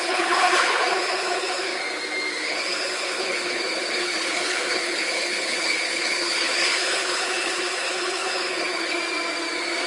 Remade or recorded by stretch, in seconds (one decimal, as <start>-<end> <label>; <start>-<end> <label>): 0.0-1.7 remade; 1.7-2.3 recorded; 2.3-9.0 remade; 9.0-9.9 recorded